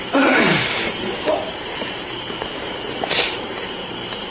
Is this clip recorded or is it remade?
remade